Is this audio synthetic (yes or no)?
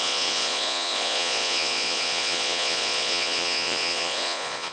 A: yes